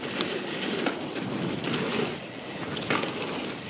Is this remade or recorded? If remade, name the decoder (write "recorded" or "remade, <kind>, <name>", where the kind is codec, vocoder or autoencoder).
recorded